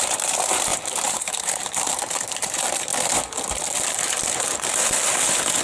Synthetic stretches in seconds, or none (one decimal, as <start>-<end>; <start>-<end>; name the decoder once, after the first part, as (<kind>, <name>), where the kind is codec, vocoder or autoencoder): 0.0-2.9 (vocoder, BigVGAN v2); 3.9-5.6